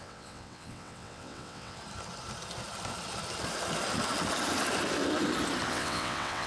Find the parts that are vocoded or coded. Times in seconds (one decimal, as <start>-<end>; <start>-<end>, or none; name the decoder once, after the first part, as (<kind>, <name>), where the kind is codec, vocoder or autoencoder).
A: 0.0-1.8 (vocoder, WaveNeXt); 5.7-6.5